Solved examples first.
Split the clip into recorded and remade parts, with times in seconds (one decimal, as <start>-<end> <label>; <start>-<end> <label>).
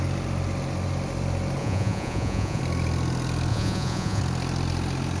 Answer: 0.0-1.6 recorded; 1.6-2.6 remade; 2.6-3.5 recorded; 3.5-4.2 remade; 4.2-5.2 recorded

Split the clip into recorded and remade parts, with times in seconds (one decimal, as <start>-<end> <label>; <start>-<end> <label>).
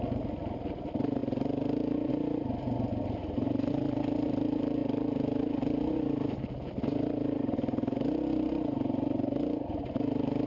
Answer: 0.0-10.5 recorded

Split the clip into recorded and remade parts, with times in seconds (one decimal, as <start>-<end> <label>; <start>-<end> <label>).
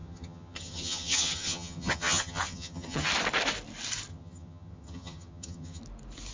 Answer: 0.0-3.1 remade; 3.1-4.1 recorded; 4.1-5.8 remade; 5.8-6.3 recorded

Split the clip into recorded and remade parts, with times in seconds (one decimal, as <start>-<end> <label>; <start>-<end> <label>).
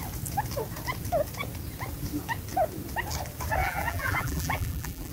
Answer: 0.0-3.6 recorded; 3.6-5.1 remade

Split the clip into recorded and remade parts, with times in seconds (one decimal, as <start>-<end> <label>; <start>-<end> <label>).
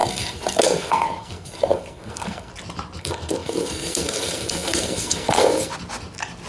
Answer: 0.0-2.5 remade; 2.5-3.0 recorded; 3.0-5.7 remade; 5.7-6.5 recorded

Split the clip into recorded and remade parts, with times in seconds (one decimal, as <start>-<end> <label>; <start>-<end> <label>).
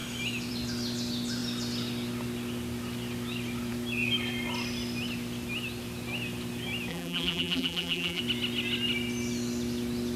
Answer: 0.0-6.9 recorded; 6.9-8.2 remade; 8.2-10.2 recorded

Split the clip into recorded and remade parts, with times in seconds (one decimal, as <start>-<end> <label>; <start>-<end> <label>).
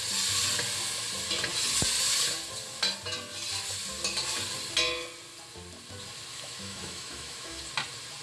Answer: 0.0-6.3 recorded; 6.3-7.6 remade; 7.6-8.2 recorded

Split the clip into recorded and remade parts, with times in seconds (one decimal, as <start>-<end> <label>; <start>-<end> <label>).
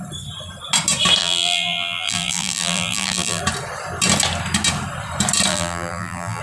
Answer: 0.0-1.2 recorded; 1.2-3.4 remade; 3.4-5.5 recorded; 5.5-6.4 remade